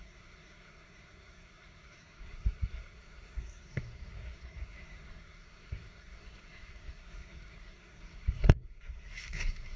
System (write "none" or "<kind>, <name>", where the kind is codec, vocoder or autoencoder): codec, SNAC